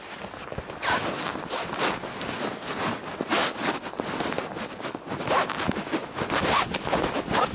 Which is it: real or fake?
real